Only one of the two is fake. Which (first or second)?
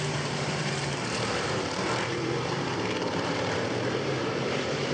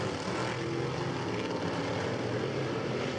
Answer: first